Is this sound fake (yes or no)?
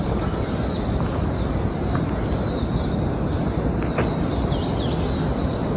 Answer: no